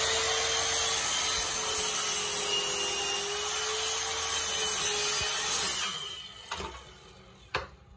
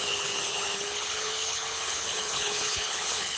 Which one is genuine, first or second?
first